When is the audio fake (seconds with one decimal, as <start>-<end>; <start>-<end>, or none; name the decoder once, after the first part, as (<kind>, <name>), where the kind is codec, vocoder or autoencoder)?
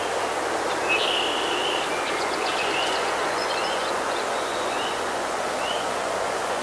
1.9-6.6 (vocoder, Vocos)